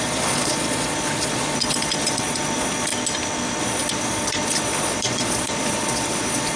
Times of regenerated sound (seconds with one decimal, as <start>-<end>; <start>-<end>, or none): 0.0-2.9; 3.6-6.6